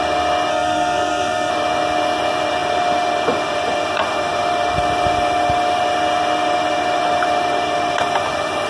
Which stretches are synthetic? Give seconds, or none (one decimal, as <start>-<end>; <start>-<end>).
0.5-1.5